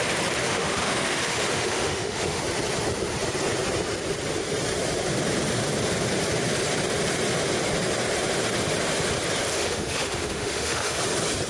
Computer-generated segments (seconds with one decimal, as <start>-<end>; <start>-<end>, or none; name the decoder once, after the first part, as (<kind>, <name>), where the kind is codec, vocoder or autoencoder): 0.4-2.4 (autoencoder, DAC-VAE); 9.5-11.0